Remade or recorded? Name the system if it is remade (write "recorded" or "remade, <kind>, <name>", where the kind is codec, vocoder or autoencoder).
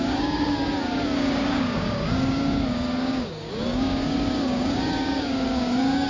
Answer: remade, codec, DAC